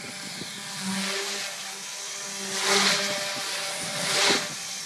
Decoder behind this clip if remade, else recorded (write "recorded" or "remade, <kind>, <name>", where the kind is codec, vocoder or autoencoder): recorded